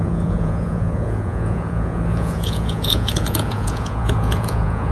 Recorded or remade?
remade